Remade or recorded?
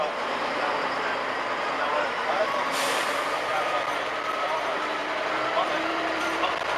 remade